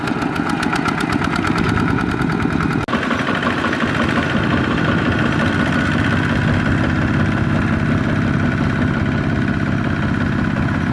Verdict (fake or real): real